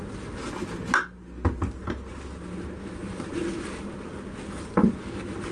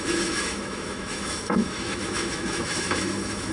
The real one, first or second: first